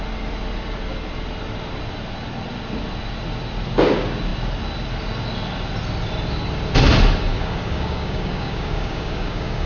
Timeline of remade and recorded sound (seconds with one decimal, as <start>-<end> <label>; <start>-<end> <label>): 0.0-7.3 recorded; 7.3-9.7 remade